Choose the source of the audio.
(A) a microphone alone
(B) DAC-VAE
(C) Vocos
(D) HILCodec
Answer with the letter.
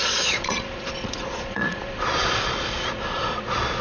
C